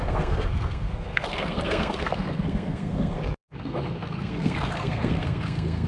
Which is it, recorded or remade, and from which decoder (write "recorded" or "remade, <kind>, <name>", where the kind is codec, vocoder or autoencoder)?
remade, codec, SNAC